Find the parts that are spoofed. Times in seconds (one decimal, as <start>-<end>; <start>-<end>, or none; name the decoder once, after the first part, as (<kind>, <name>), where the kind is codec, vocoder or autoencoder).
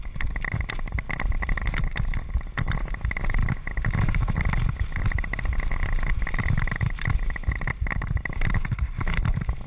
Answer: none